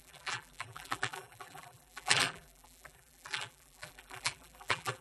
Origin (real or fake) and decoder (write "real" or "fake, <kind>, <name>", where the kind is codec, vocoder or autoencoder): fake, vocoder, BigVGAN v2